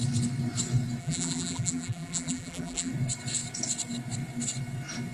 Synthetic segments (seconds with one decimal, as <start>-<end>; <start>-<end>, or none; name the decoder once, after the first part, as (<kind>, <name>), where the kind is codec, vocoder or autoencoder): 1.0-2.9 (vocoder, BigVGAN v2)